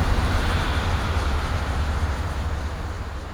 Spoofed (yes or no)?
yes